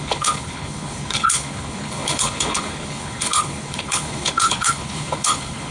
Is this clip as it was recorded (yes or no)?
no